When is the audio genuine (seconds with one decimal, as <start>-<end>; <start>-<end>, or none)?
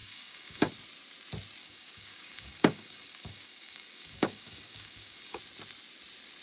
0.7-1.6; 5.4-6.4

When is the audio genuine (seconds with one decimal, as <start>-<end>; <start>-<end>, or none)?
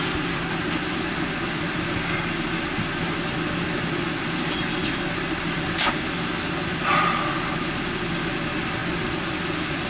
0.0-9.9